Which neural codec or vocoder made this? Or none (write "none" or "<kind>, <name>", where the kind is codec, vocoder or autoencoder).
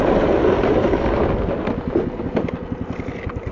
none